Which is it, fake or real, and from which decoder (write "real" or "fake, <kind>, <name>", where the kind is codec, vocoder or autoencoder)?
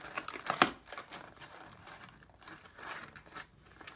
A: real